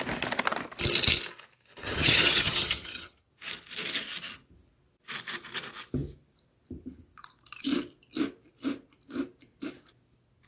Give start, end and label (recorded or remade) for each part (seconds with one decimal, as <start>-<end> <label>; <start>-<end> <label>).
0.0-1.8 recorded; 1.8-3.3 remade; 3.3-10.5 recorded